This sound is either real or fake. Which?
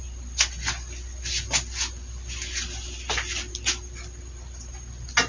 real